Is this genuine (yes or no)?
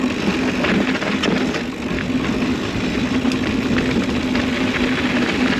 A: yes